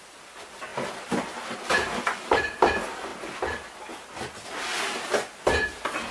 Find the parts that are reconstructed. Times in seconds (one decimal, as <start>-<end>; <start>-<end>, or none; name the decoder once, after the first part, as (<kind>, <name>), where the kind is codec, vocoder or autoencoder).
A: 0.7-2.6 (vocoder, BigVGAN v2)